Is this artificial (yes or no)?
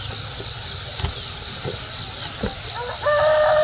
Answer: no